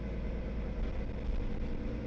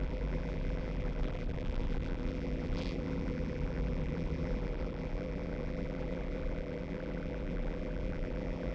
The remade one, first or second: second